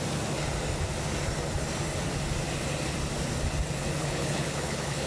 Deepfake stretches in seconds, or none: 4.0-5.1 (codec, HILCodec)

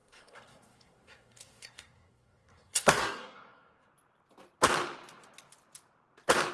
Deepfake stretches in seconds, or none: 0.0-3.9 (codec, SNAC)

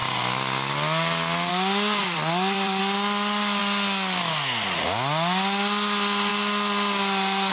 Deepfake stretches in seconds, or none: 2.0-2.8 (vocoder, BigVGAN v2)